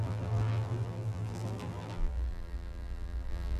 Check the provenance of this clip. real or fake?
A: fake